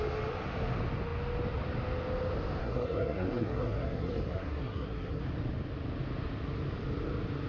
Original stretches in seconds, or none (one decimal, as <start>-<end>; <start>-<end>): 0.0-2.6; 5.2-7.5

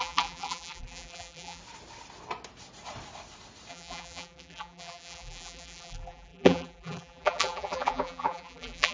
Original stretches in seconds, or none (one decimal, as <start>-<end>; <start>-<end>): 1.6-3.7

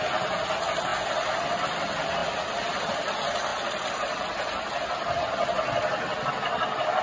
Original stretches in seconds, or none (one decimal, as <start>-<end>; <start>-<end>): 0.0-7.0

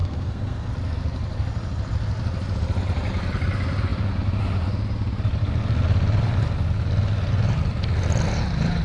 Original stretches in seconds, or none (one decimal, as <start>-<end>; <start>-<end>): 0.7-8.8